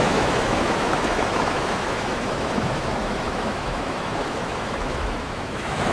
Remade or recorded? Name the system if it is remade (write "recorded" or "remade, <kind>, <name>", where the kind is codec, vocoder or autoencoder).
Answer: remade, autoencoder, DAC-VAE